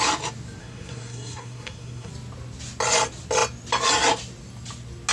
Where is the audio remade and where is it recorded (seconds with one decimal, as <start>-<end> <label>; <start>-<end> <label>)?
0.0-0.6 recorded; 0.6-2.1 remade; 2.1-5.1 recorded